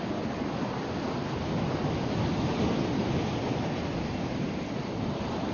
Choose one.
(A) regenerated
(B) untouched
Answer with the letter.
B